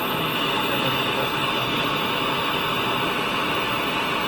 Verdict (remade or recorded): recorded